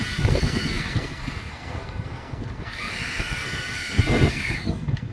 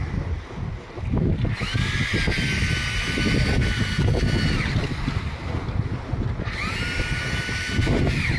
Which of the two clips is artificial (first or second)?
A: first